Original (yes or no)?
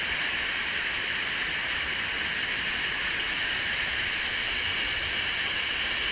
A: yes